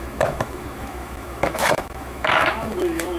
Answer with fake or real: fake